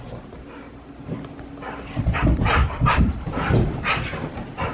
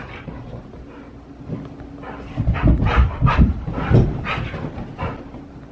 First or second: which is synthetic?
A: first